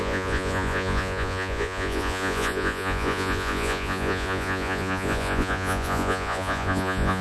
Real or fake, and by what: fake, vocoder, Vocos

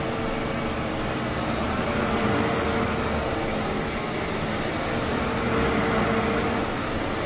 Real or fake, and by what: real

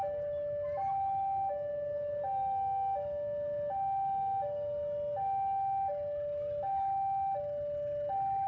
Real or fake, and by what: real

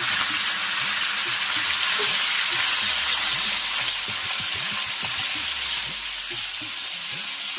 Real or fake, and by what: real